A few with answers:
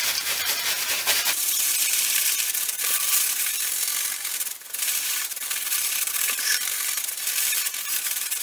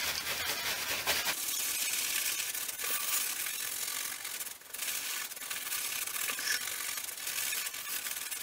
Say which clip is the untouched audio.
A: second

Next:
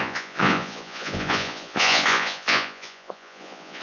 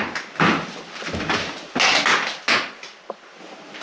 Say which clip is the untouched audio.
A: second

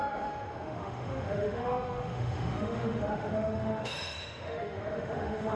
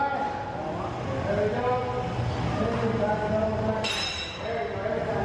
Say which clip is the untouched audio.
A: second